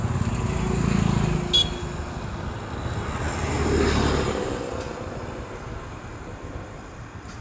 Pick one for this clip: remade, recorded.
recorded